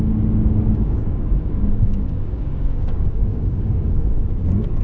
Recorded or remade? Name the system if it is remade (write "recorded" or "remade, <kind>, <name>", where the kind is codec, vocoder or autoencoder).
remade, codec, DAC